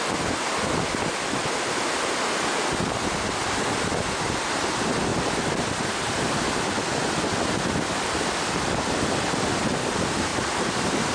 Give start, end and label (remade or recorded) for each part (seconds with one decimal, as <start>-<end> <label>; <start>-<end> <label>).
0.0-5.1 recorded; 5.1-6.5 remade; 6.5-10.3 recorded; 10.3-11.1 remade